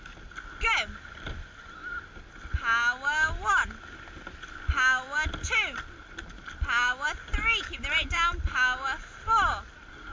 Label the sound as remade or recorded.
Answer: recorded